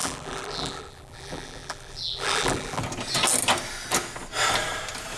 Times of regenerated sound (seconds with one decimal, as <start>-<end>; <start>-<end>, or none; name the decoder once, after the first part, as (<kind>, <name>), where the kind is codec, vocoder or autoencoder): 0.0-2.8 (vocoder, BigVGAN v2)